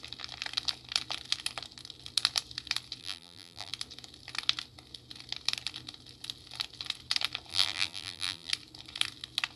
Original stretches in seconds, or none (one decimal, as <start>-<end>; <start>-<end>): 0.0-3.0; 3.7-7.5; 8.5-9.6